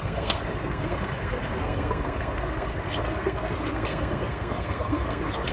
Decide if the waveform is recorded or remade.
remade